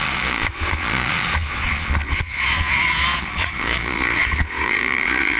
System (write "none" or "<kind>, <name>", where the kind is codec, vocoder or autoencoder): vocoder, Vocos